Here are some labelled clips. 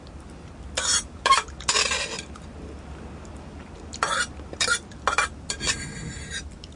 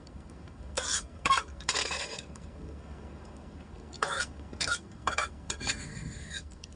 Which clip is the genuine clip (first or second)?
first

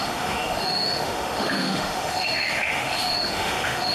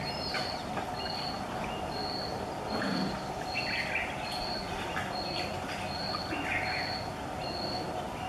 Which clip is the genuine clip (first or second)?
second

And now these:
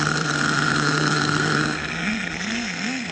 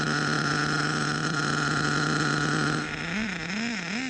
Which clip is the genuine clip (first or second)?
second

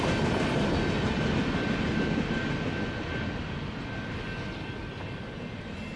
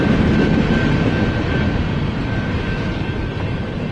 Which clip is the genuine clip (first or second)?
first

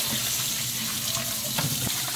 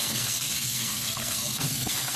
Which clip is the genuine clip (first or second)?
first